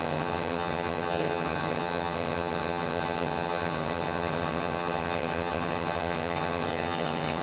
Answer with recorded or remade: remade